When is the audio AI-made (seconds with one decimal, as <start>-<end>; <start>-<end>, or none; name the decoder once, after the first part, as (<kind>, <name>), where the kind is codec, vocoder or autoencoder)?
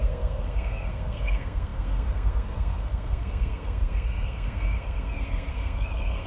0.0-6.3 (codec, SNAC)